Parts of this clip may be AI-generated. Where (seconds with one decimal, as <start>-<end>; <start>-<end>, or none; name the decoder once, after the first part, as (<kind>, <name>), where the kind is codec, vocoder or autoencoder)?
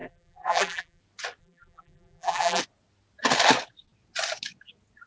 0.0-1.0 (vocoder, BigVGAN v2); 1.4-2.6